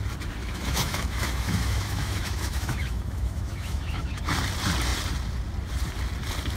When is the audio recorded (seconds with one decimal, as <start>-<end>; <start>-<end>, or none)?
0.0-0.4; 4.2-6.6